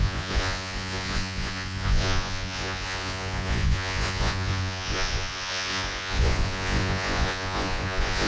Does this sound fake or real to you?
fake